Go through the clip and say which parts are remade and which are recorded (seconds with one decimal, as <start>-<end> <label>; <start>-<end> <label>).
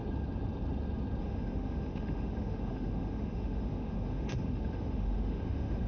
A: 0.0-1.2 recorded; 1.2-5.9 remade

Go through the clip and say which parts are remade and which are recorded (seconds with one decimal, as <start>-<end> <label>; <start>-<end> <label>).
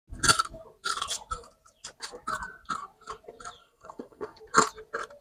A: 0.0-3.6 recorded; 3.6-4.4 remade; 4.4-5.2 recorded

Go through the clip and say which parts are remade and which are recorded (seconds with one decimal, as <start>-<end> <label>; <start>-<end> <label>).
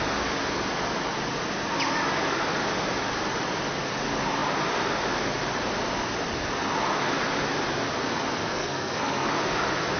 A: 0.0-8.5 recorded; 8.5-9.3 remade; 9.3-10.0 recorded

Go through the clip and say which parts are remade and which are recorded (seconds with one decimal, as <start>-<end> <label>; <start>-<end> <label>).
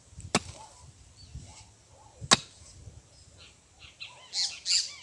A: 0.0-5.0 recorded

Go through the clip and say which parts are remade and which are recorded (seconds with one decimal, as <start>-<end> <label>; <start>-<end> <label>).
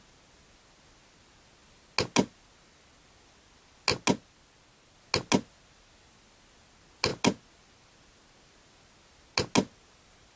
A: 0.0-10.4 recorded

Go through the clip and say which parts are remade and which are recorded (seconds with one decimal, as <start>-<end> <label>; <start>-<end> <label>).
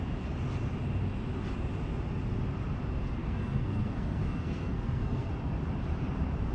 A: 0.0-3.2 recorded; 3.2-5.3 remade; 5.3-6.5 recorded